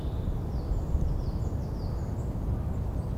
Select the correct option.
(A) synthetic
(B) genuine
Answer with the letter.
B